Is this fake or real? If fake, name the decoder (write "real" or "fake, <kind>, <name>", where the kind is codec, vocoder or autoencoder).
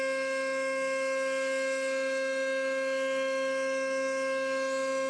fake, autoencoder, DAC-VAE